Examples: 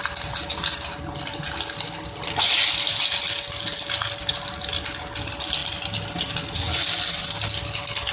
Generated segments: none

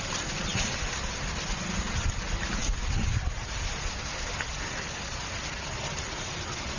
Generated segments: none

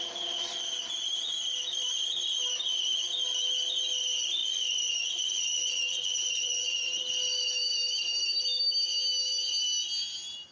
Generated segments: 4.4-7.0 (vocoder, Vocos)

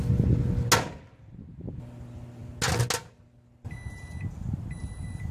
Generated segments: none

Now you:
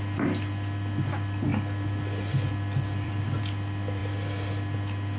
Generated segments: 1.5-3.4 (vocoder, BigVGAN v2)

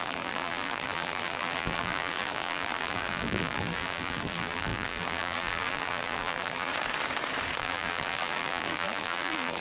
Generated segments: 0.0-6.7 (vocoder, BigVGAN v2); 7.6-9.6

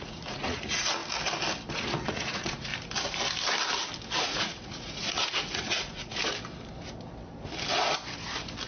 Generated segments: 0.0-1.0 (vocoder, Vocos); 1.7-2.7; 4.2-6.2

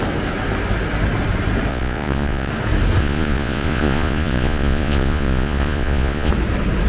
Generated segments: 1.7-2.5 (vocoder, Vocos); 3.0-6.3